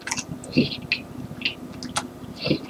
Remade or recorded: recorded